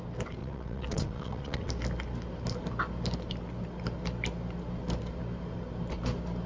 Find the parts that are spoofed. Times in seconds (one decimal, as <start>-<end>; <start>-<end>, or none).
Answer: 0.4-1.7